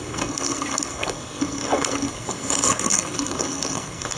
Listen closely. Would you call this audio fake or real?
fake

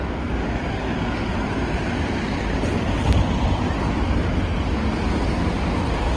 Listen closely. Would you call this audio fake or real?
real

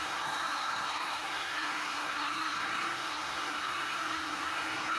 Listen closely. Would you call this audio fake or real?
fake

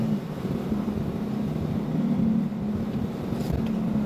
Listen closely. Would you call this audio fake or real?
real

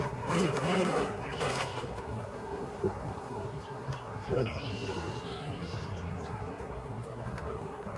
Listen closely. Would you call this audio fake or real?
fake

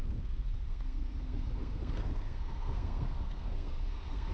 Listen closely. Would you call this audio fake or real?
fake